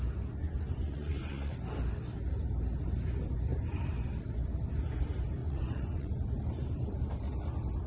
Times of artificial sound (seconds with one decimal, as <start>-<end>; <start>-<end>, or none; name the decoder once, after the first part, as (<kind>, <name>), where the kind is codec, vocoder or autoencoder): 0.4-1.5 (vocoder, Vocos); 5.4-6.1